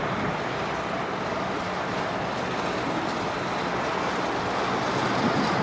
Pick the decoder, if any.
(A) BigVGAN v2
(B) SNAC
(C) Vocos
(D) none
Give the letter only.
D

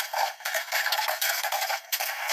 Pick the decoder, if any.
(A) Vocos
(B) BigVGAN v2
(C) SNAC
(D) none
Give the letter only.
C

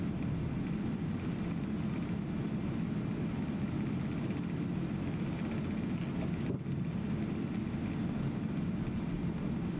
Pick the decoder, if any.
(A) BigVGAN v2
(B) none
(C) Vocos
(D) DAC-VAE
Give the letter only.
B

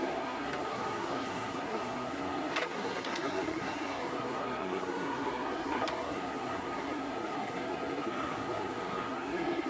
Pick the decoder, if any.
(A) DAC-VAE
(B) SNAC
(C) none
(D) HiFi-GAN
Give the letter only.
B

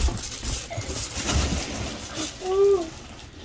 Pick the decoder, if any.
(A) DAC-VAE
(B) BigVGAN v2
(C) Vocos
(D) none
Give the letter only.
D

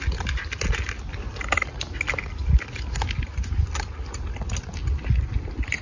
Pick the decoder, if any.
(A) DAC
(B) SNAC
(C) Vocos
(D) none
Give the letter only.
D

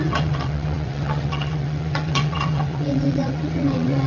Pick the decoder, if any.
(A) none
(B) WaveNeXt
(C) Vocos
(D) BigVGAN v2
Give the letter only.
B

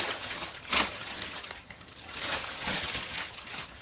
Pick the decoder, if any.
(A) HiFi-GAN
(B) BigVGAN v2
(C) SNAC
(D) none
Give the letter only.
A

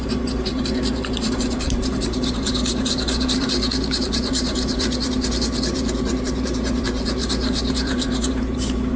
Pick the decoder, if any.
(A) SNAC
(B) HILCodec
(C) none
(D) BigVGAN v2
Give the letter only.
D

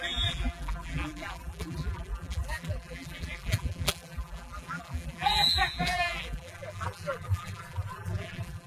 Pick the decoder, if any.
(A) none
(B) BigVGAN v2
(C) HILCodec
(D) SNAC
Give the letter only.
B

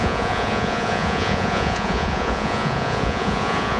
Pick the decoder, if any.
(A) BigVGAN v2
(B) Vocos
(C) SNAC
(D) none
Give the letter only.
B